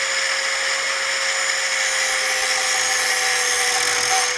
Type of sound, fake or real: real